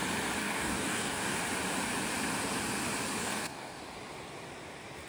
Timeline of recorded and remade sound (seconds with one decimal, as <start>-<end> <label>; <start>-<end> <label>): 0.0-0.4 recorded; 0.4-1.4 remade; 1.4-3.2 recorded; 3.2-3.8 remade; 3.8-5.1 recorded